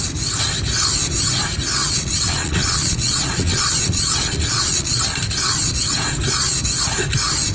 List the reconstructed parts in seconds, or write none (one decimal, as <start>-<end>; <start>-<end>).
1.8-5.0